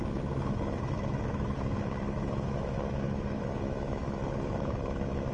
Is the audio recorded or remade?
remade